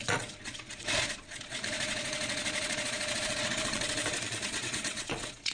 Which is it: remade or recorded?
remade